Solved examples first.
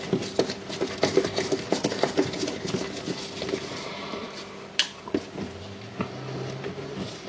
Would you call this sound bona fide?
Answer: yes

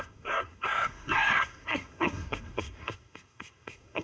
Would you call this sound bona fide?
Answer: no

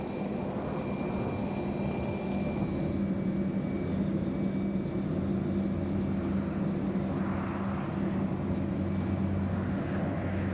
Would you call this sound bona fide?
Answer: yes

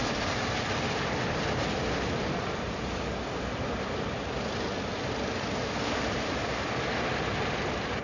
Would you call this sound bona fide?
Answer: yes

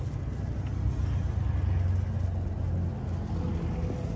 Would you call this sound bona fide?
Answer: yes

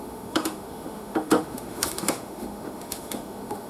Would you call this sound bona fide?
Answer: no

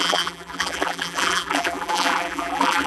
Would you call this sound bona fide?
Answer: no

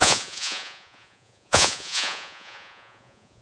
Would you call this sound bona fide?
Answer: no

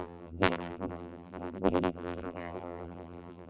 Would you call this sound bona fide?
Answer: no